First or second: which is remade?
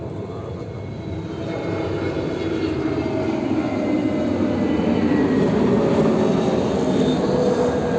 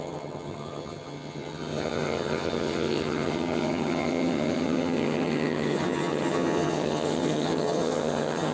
second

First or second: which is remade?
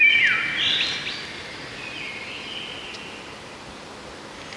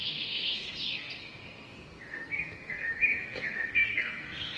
second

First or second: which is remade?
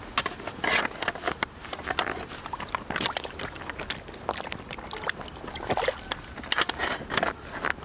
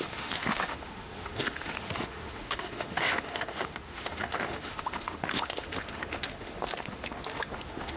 second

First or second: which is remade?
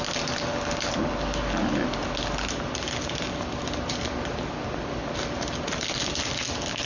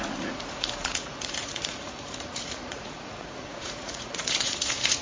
second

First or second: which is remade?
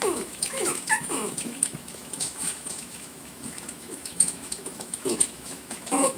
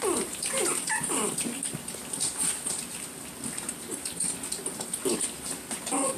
first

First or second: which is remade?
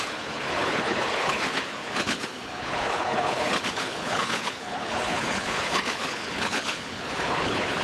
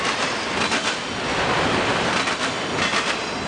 first